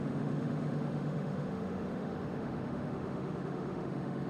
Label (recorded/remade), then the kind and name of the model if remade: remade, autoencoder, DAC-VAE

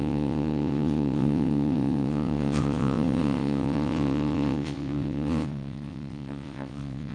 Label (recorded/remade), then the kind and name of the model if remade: remade, vocoder, WaveNeXt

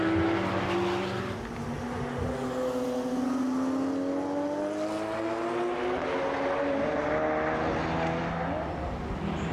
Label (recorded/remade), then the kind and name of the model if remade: recorded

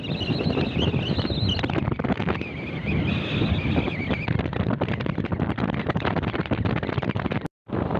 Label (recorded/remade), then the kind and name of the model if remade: recorded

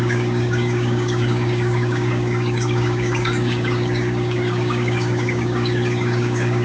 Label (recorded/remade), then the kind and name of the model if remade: remade, codec, DAC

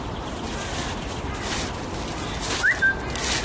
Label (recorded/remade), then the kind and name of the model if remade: recorded